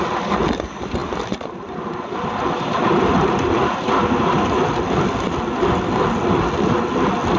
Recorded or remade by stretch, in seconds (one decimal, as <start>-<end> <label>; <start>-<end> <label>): 0.0-7.4 recorded